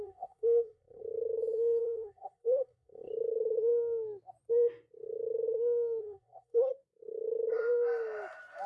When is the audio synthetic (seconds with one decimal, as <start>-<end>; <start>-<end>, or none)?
0.0-1.0; 1.8-3.1; 6.0-6.7